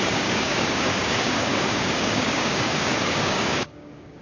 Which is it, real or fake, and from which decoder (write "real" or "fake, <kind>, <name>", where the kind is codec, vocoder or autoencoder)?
fake, codec, DAC